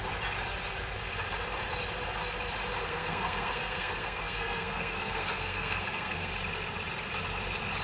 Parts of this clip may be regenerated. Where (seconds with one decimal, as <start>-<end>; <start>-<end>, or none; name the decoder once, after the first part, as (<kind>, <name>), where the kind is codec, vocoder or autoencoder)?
2.7-6.3 (codec, SNAC)